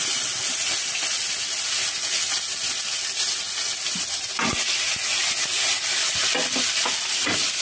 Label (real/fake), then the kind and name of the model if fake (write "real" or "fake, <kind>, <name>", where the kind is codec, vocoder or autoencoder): real